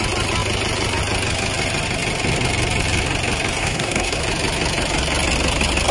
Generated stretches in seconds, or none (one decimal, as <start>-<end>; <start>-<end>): 3.6-4.2